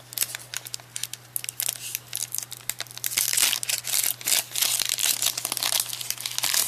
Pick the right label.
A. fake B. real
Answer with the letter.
B